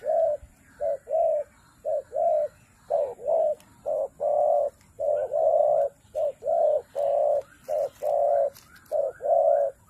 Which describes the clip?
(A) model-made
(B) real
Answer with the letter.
B